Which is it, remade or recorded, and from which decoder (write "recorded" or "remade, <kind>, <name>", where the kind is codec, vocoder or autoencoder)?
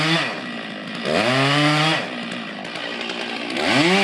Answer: recorded